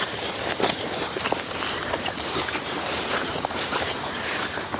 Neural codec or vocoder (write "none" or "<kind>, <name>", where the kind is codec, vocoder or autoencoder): vocoder, BigVGAN v2